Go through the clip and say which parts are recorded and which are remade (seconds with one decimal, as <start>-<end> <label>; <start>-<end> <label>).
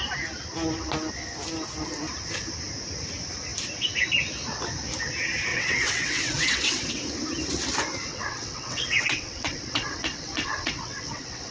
0.0-5.5 recorded; 5.5-7.0 remade; 7.0-8.1 recorded; 8.1-11.5 remade